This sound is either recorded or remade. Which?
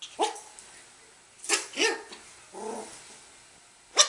recorded